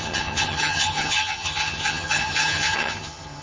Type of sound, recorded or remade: remade